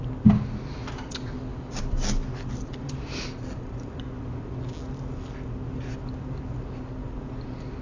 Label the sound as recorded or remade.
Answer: recorded